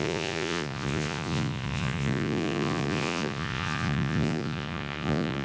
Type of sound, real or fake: fake